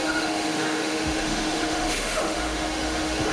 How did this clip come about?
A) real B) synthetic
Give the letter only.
B